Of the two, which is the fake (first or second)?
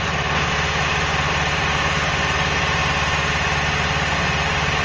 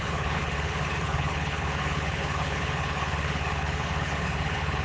second